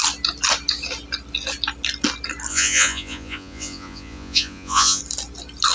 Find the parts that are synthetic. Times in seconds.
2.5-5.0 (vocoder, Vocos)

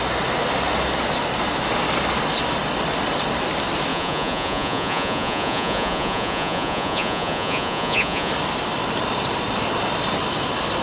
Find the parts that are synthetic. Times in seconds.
3.9-8.3 (vocoder, Vocos)

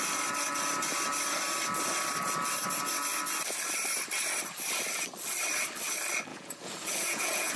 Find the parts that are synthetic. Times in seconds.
6.3-7.6 (vocoder, Vocos)

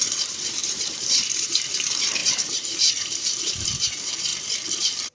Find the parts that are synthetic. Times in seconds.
0.0-4.3 (vocoder, BigVGAN v2)